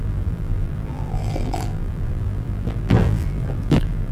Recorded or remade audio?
remade